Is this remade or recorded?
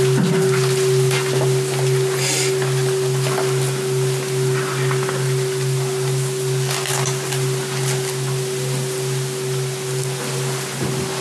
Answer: recorded